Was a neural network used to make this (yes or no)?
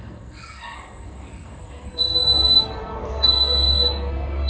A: yes